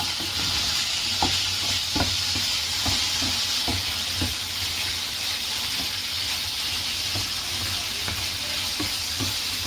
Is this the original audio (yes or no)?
yes